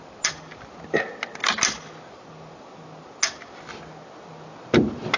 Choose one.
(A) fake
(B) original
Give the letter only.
B